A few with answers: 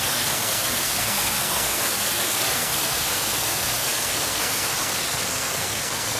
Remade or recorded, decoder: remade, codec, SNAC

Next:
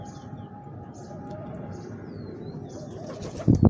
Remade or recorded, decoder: recorded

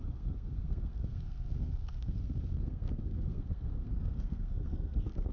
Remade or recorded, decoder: remade, codec, SNAC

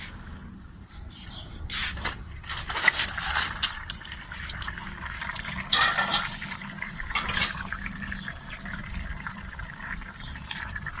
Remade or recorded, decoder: remade, vocoder, BigVGAN v2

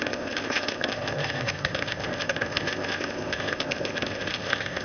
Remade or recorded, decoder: remade, codec, ZipCodec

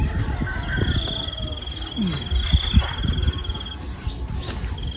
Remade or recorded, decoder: recorded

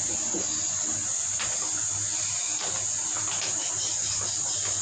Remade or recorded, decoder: recorded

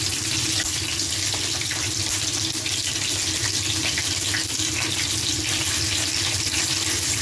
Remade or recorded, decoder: recorded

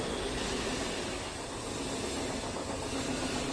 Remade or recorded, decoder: recorded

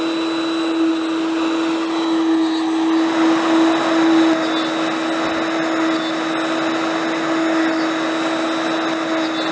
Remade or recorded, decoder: recorded